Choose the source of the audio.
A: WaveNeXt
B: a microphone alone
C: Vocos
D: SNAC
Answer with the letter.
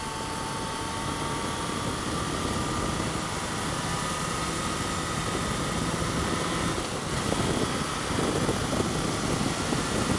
B